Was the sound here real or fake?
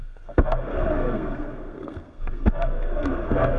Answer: fake